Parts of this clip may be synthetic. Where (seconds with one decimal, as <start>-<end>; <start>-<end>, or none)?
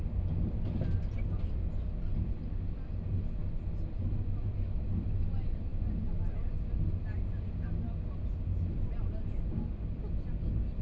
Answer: none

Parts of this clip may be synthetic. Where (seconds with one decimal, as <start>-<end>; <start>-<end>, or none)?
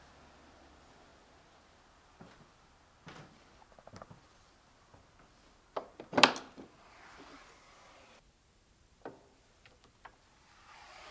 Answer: none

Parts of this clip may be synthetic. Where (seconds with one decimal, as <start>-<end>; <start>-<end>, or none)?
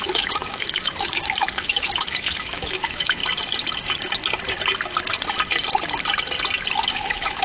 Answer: 0.0-3.2; 6.9-7.4